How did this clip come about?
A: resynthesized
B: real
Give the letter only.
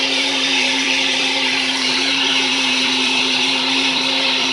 A